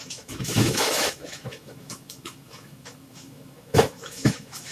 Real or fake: fake